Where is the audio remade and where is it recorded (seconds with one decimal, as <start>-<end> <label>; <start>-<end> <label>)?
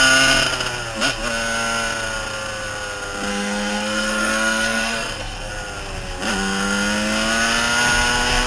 0.0-3.3 recorded; 3.3-5.5 remade; 5.5-8.5 recorded